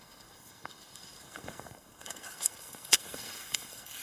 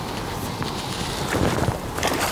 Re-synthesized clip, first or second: first